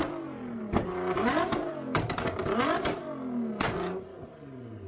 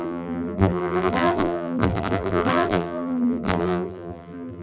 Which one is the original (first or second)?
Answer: first